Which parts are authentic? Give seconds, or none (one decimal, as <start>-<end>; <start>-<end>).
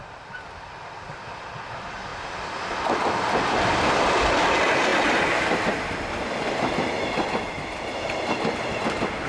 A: 0.0-9.3